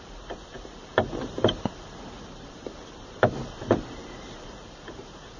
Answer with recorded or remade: remade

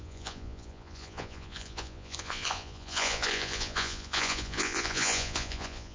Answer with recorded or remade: remade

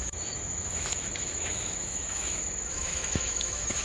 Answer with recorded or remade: remade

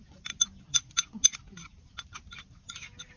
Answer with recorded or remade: recorded